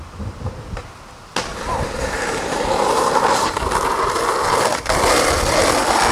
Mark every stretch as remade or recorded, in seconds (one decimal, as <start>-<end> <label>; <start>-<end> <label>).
0.0-1.5 recorded; 1.5-3.6 remade; 3.6-6.1 recorded